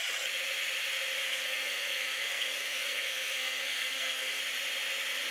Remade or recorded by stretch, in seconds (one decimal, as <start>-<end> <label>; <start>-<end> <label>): 0.0-1.2 recorded; 1.2-4.4 remade; 4.4-5.3 recorded